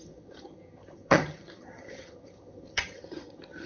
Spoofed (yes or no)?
yes